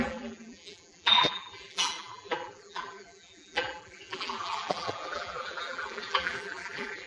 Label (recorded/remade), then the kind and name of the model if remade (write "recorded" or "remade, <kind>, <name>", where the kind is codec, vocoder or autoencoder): remade, vocoder, BigVGAN v2